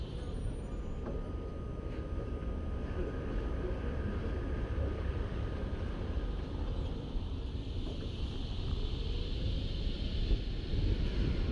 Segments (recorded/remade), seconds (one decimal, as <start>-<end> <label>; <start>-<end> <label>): 0.0-11.5 recorded